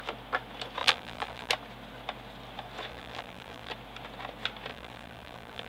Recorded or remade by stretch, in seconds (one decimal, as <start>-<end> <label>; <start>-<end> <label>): 0.0-0.8 recorded; 0.8-1.5 remade; 1.5-2.9 recorded; 2.9-3.7 remade; 3.7-4.7 recorded; 4.7-5.7 remade